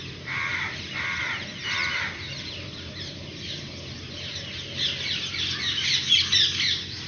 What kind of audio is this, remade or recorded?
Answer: remade